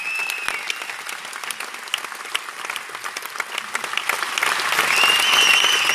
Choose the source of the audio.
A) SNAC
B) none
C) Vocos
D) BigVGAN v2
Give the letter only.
B